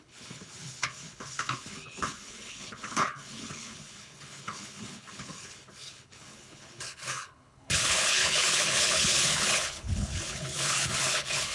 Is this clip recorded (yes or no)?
no